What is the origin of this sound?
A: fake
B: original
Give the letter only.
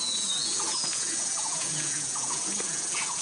A